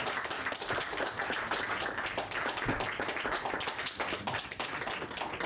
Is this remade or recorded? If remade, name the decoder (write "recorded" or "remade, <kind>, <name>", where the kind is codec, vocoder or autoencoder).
recorded